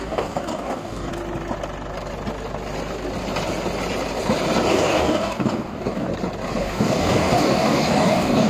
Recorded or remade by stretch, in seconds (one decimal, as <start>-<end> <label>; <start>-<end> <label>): 0.0-1.1 remade; 1.1-4.7 recorded; 4.7-6.1 remade; 6.1-6.6 recorded; 6.6-8.5 remade